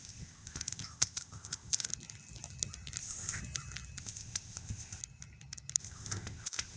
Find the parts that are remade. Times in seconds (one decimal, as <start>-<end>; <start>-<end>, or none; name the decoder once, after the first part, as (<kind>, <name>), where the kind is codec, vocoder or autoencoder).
0.0-1.9 (codec, ZipCodec); 3.0-3.4; 4.0-5.0; 5.8-6.8